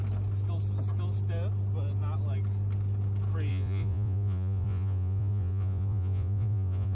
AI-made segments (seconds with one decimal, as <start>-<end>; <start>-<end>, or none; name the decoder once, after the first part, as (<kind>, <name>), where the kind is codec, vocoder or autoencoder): 3.5-7.0 (vocoder, Vocos)